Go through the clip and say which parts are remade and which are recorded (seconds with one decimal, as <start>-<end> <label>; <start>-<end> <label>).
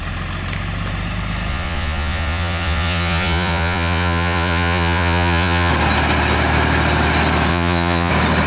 0.0-1.5 recorded; 1.5-5.7 remade; 5.7-7.5 recorded; 7.5-8.1 remade; 8.1-8.5 recorded